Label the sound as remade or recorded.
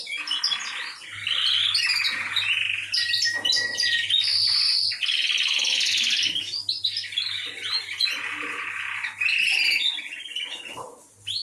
recorded